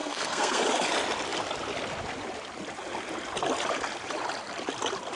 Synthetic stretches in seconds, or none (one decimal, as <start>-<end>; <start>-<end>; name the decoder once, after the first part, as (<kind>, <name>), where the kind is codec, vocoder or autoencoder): 0.0-0.6 (codec, SNAC)